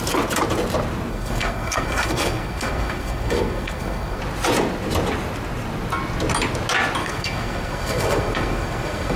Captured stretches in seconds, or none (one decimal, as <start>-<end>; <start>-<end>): 0.0-1.1; 4.2-7.0